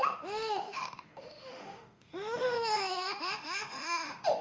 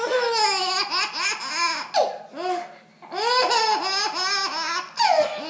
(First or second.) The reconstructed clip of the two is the first